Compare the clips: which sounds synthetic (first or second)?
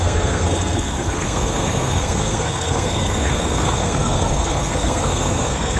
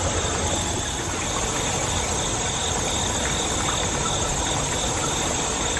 first